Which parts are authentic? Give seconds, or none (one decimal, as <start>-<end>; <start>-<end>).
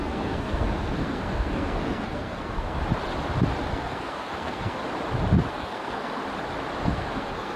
2.8-3.7; 4.8-5.5; 6.2-6.8